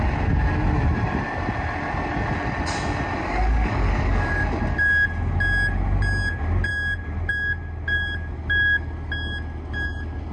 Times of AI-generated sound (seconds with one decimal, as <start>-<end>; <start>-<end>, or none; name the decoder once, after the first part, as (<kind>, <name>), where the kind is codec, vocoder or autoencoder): 3.2-4.4 (codec, DAC)